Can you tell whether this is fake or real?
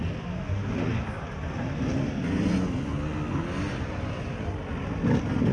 real